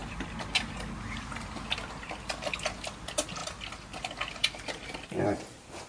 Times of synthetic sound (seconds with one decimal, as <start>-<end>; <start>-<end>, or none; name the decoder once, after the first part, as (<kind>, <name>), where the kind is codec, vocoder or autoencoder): none